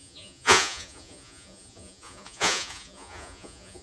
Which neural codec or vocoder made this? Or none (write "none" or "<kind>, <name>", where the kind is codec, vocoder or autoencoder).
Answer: vocoder, Vocos